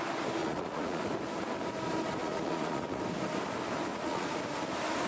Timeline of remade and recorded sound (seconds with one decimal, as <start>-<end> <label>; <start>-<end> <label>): 0.0-0.4 recorded; 0.4-1.0 remade; 1.0-2.2 recorded; 2.2-3.0 remade; 3.0-3.9 recorded; 3.9-4.4 remade; 4.4-5.1 recorded